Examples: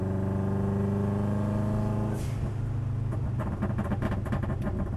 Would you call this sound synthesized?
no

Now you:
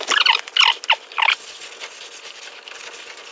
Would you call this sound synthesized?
no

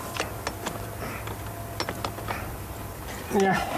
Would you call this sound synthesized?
no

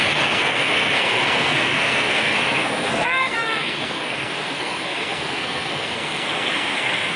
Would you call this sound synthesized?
yes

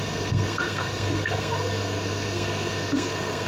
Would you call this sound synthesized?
yes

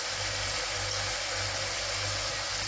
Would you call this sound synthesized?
no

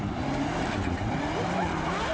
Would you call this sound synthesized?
no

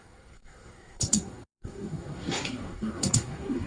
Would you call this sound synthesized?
yes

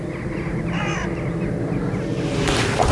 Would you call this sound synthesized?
no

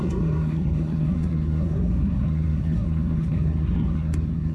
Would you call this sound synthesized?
yes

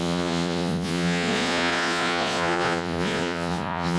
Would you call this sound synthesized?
yes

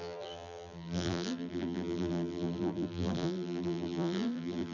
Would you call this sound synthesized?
yes